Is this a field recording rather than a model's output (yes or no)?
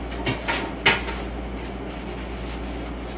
yes